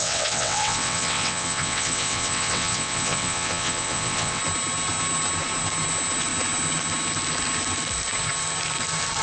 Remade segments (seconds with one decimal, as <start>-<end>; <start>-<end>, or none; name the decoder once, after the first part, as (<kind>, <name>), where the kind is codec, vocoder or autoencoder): 0.0-4.4 (vocoder, WaveNeXt)